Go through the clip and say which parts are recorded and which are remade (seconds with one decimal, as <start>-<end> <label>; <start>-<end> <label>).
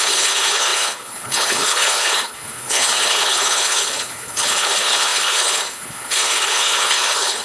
0.0-7.4 remade